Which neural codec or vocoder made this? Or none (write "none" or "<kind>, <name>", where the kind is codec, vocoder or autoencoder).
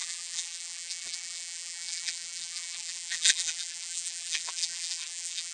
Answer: vocoder, BigVGAN v2